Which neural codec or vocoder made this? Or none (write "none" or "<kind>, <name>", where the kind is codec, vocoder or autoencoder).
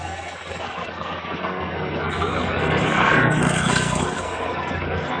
codec, SNAC